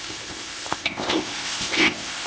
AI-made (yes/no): yes